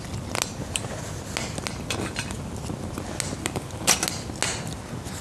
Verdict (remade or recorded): recorded